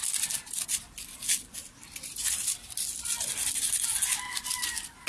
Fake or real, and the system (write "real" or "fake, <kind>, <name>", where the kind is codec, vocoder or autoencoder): real